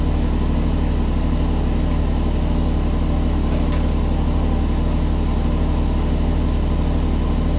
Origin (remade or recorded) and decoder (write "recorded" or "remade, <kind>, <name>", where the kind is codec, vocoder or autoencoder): recorded